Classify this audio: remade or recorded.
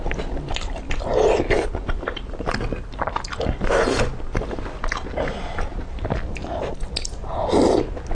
recorded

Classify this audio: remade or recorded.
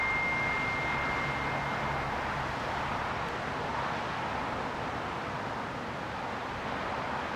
recorded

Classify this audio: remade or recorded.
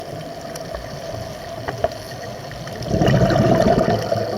recorded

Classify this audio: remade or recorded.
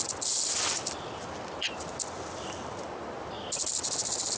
recorded